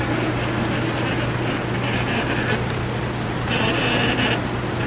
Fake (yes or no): no